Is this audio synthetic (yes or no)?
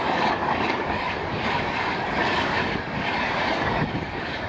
yes